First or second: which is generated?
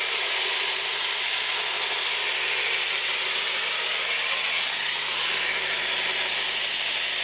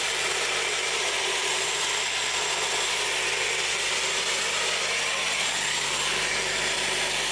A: second